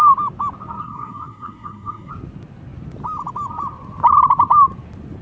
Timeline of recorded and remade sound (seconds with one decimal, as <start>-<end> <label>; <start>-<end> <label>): 0.0-0.8 recorded; 0.8-2.1 remade; 2.1-5.2 recorded